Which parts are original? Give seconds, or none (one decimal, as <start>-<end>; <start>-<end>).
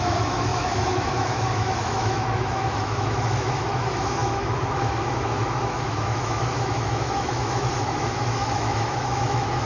none